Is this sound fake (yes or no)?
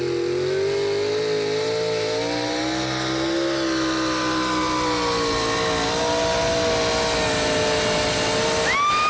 no